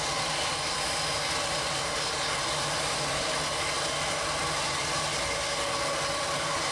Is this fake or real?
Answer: real